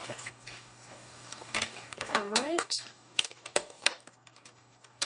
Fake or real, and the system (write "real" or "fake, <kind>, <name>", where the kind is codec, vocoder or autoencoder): fake, codec, DAC